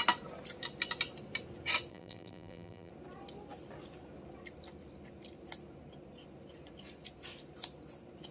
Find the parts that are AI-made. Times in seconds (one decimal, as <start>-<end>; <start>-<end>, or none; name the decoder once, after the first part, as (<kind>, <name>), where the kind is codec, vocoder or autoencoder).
1.9-2.9 (vocoder, BigVGAN v2)